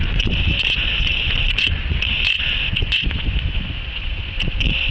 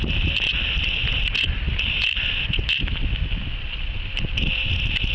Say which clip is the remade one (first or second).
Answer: first